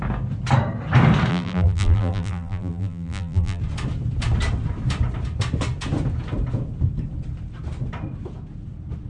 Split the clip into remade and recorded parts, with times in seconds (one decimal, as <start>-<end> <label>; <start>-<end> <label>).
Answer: 0.0-1.3 recorded; 1.3-3.6 remade; 3.6-9.1 recorded